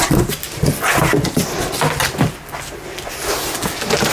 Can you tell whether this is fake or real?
real